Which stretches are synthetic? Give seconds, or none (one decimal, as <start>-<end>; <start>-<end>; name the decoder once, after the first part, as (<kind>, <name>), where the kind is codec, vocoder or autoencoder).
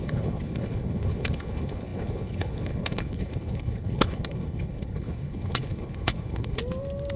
0.0-6.6 (codec, HILCodec)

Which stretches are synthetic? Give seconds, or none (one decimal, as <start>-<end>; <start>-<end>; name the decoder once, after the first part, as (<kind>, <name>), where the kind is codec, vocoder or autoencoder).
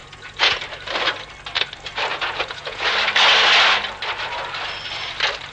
0.0-0.6 (vocoder, Vocos); 2.1-2.9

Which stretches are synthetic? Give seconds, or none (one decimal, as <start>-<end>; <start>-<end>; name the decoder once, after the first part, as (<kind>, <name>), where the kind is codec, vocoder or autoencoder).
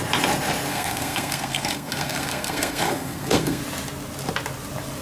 0.7-3.6 (codec, SNAC)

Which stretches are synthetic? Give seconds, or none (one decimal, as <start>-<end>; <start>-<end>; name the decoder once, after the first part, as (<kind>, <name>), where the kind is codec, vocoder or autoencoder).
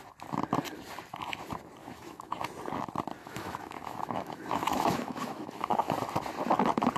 1.8-2.4 (autoencoder, DAC-VAE); 3.2-5.9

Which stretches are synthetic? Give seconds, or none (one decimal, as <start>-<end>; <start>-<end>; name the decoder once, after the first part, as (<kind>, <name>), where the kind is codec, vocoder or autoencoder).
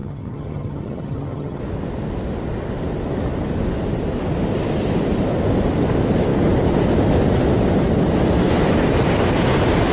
0.0-1.6 (vocoder, HiFi-GAN)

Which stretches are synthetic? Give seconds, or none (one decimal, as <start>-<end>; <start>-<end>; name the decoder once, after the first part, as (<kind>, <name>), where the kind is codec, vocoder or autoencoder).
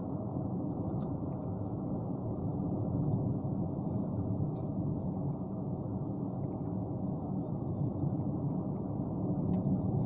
none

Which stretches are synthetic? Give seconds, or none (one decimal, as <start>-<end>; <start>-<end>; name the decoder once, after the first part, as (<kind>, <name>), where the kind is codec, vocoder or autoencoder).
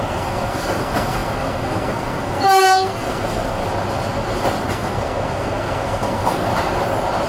0.0-3.6 (codec, SNAC); 4.7-6.5